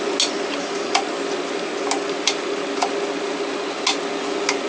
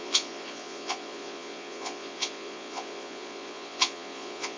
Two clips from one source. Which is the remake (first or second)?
second